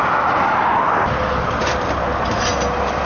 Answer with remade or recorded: recorded